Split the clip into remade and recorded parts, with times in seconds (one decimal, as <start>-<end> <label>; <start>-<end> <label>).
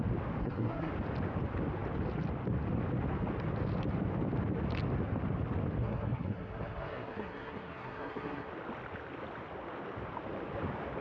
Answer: 0.0-0.4 recorded; 0.4-0.9 remade; 0.9-5.8 recorded; 5.8-8.5 remade; 8.5-11.0 recorded